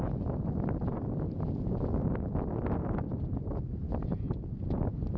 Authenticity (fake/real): real